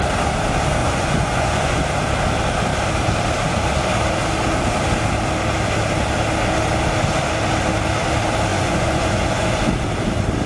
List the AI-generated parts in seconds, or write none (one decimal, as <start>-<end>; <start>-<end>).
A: 0.8-1.8; 8.5-9.7